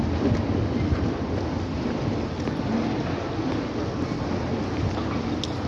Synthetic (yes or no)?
no